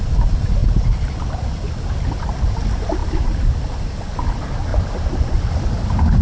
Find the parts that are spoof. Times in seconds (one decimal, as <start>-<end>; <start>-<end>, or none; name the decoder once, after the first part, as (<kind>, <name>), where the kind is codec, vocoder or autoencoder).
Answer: 4.7-5.3 (vocoder, BigVGAN v2)